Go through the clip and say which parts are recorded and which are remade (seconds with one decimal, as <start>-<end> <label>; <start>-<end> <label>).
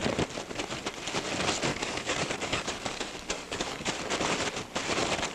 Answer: 0.0-1.7 recorded; 1.7-3.9 remade; 3.9-5.3 recorded